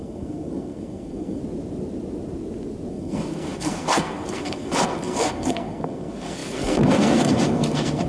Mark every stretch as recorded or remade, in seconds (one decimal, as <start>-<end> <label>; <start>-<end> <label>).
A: 0.0-1.4 remade; 1.4-2.9 recorded; 2.9-8.1 remade